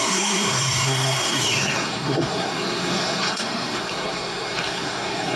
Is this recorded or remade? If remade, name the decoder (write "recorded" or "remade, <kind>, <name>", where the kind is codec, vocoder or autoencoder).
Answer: remade, codec, SNAC